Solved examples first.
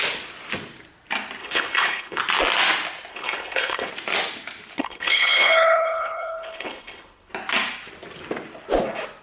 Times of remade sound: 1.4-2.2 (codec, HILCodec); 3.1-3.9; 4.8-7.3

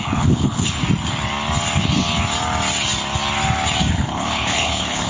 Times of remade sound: 0.0-0.8 (codec, HILCodec); 3.9-5.1

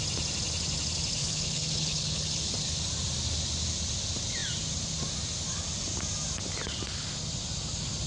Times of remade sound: 1.2-2.5 (codec, HILCodec)

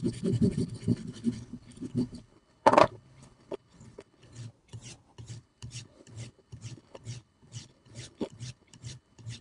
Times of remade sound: 0.0-4.5 (codec, HILCodec); 5.3-9.4

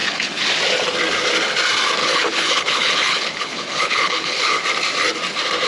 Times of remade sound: 0.0-0.5 (codec, HILCodec); 2.0-4.6